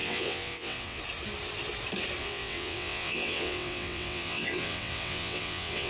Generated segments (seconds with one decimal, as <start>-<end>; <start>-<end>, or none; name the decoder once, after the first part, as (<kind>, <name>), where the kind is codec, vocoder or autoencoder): 0.0-1.0 (vocoder, WaveNeXt); 2.2-5.9